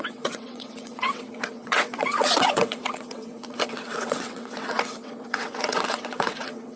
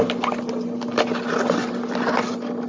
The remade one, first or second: first